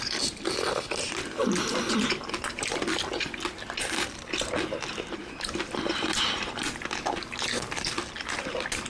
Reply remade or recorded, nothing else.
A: recorded